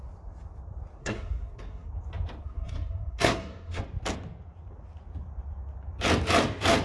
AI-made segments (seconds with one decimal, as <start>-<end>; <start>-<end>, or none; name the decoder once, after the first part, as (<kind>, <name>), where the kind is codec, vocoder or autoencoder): 1.0-1.9 (codec, SNAC); 2.4-3.8